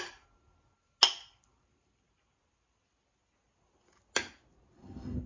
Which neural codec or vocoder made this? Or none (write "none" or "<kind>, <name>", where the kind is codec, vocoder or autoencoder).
none